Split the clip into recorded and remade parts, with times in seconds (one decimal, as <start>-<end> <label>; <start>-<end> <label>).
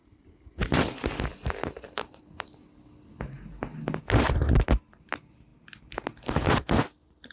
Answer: 0.0-0.8 remade; 0.8-1.3 recorded; 1.3-2.2 remade; 2.2-7.3 recorded